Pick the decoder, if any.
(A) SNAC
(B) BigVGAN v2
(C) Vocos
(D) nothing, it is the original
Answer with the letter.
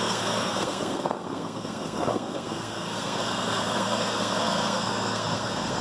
A